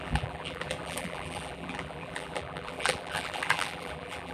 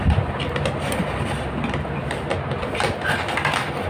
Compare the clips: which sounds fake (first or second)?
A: first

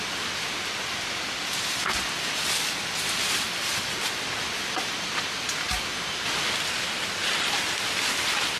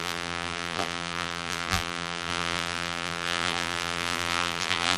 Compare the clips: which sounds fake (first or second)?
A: second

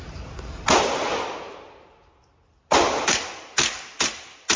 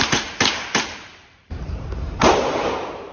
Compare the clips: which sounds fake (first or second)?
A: second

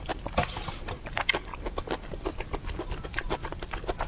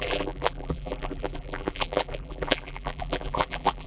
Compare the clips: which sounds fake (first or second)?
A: second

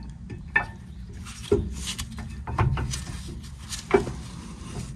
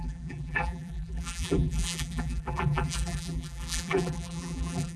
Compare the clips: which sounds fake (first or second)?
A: second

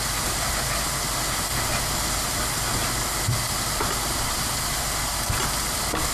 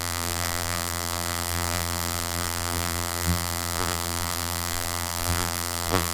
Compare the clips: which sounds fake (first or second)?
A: second